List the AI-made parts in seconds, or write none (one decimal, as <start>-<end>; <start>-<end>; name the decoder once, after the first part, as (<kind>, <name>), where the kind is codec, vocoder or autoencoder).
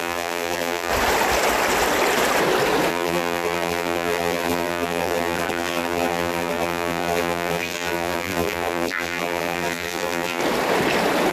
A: 0.0-0.9 (vocoder, BigVGAN v2); 2.9-10.4